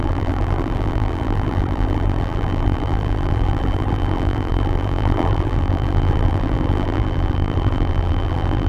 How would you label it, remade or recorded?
remade